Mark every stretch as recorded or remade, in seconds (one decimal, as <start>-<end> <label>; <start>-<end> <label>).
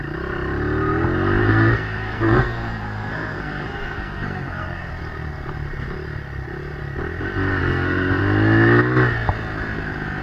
0.0-1.4 recorded; 1.4-4.9 remade; 4.9-7.6 recorded; 7.6-8.2 remade; 8.2-10.2 recorded